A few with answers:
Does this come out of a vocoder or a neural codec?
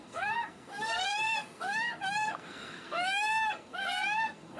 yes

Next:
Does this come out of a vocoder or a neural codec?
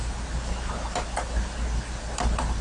no